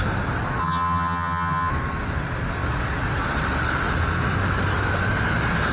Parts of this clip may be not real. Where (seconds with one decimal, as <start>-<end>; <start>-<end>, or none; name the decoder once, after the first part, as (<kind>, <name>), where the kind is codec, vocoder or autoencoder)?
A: 0.6-1.7 (vocoder, HiFi-GAN)